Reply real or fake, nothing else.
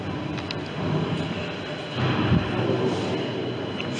real